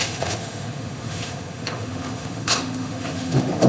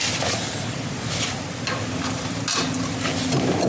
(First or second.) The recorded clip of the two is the second